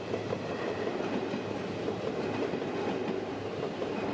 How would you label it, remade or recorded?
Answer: recorded